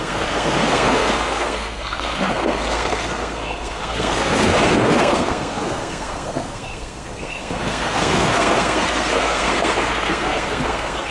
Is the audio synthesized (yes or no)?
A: yes